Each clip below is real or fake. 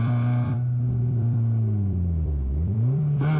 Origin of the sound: fake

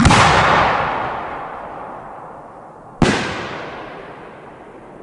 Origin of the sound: real